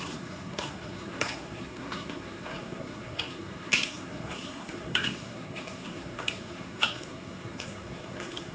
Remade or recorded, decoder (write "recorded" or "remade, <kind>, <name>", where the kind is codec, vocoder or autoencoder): remade, codec, SNAC